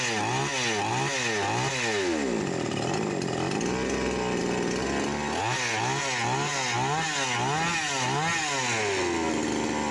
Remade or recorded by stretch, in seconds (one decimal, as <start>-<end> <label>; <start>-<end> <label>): 0.0-9.9 recorded